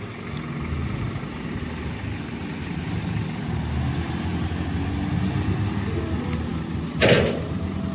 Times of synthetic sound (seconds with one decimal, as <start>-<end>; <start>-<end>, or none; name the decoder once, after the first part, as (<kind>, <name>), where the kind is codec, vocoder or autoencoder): none